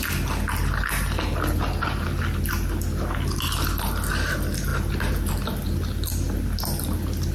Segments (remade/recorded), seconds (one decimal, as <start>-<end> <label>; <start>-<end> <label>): 0.0-7.3 recorded